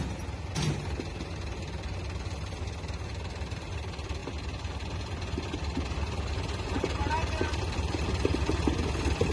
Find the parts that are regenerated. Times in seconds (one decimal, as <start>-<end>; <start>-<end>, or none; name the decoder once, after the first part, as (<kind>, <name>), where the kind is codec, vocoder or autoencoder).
none

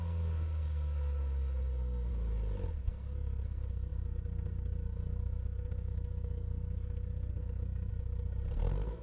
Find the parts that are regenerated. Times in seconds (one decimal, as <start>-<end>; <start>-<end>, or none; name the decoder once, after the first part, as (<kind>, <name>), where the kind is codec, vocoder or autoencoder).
0.0-2.1 (codec, SNAC); 2.8-9.0

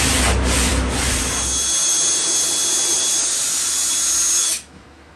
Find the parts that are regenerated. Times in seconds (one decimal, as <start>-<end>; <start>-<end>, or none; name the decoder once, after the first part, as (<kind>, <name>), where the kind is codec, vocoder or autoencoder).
4.4-5.2 (autoencoder, DAC-VAE)

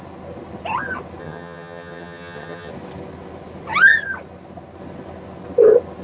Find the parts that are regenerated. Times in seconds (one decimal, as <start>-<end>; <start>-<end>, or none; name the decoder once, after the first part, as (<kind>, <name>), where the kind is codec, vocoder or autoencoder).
1.2-2.7 (vocoder, HiFi-GAN)